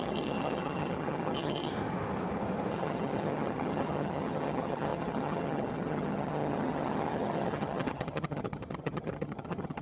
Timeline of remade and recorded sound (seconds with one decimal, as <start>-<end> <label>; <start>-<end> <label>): 0.0-1.7 remade; 1.7-2.7 recorded; 2.7-9.8 remade